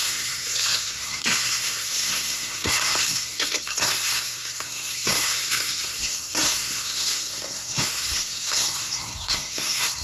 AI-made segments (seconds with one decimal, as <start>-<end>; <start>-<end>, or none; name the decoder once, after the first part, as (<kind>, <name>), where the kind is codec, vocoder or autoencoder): 0.0-10.0 (codec, SNAC)